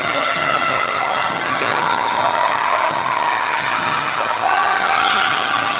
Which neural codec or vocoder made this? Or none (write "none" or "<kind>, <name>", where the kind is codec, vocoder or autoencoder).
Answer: vocoder, HiFi-GAN